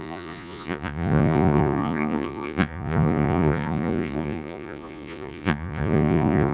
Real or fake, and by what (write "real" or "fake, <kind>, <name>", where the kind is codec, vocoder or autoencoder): fake, vocoder, Vocos